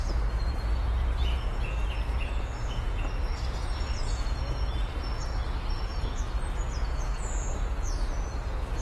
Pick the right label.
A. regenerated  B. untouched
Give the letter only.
A